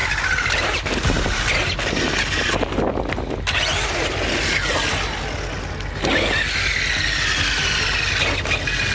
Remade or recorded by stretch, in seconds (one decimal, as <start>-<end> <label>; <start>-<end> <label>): 0.0-8.9 recorded